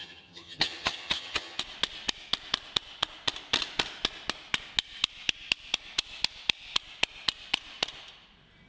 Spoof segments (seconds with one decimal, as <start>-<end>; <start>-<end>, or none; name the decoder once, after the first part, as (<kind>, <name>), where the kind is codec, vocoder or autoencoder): 0.0-1.6 (vocoder, HiFi-GAN)